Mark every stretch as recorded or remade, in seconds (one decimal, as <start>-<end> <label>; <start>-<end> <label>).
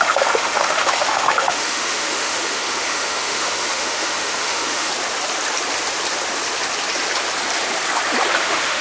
0.0-4.9 remade; 4.9-8.4 recorded; 8.4-8.8 remade